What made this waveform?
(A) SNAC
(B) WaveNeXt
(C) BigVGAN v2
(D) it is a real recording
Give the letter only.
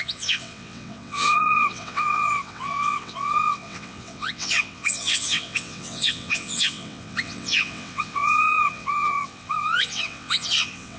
B